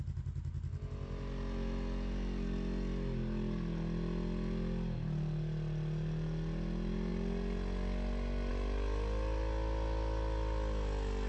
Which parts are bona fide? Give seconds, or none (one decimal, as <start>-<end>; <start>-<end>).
0.0-11.3